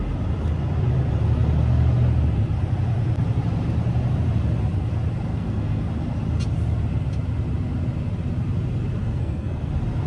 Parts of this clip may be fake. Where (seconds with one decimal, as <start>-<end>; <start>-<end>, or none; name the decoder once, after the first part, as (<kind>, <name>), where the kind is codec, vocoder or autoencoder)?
5.3-5.8 (codec, SNAC); 9.0-9.7